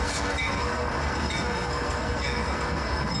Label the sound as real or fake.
fake